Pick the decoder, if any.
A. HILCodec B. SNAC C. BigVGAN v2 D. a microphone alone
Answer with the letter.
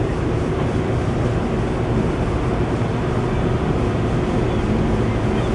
D